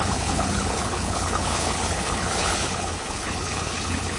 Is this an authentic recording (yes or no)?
no